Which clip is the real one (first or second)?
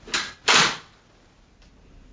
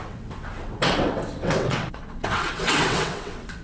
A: first